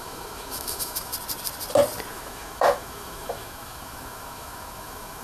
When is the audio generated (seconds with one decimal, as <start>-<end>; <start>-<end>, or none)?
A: 0.0-1.1; 2.1-5.2